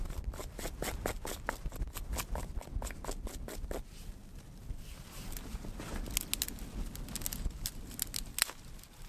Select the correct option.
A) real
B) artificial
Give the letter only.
A